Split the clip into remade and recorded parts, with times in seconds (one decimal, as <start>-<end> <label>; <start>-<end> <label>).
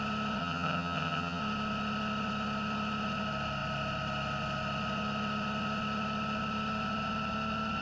0.0-0.4 recorded; 0.4-1.4 remade; 1.4-7.8 recorded